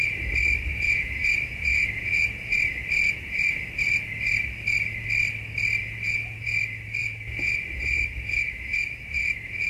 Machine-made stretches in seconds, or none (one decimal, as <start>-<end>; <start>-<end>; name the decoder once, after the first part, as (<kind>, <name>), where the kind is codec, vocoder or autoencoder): 0.7-2.5 (vocoder, Vocos); 5.8-6.6; 7.0-9.2

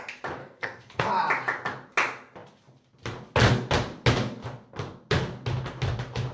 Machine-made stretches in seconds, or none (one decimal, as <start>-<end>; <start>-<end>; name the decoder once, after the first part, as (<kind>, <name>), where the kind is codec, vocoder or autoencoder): 0.4-1.1 (codec, SNAC)

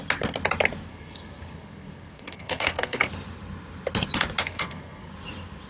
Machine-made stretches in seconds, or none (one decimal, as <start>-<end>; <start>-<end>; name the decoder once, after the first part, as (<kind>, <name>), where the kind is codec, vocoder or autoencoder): 0.9-3.1 (codec, SNAC); 4.4-5.1

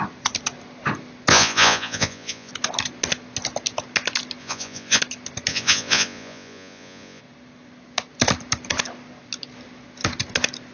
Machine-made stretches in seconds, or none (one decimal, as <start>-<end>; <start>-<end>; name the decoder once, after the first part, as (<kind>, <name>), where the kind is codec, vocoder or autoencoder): 1.3-2.5 (vocoder, Vocos); 4.4-5.0; 5.5-7.2

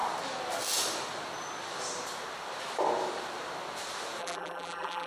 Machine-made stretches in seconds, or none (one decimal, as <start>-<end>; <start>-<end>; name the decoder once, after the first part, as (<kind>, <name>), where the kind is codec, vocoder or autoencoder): 4.2-5.1 (vocoder, BigVGAN v2)

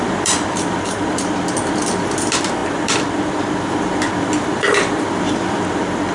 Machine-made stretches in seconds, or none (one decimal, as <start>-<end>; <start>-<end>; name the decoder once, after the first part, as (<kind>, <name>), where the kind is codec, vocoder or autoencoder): 0.0-6.1 (vocoder, BigVGAN v2)

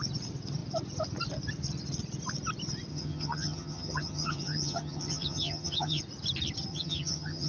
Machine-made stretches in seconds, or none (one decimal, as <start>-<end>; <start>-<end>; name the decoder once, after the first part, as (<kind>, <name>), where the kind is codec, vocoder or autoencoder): 2.9-6.0 (vocoder, HiFi-GAN); 6.7-7.5